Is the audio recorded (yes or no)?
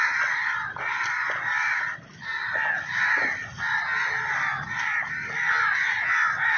yes